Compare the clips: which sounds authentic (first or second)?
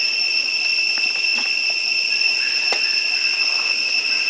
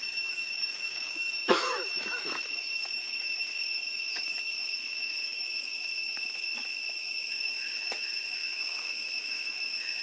first